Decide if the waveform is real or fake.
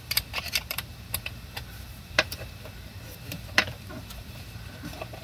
fake